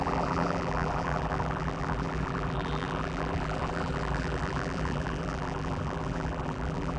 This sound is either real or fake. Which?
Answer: fake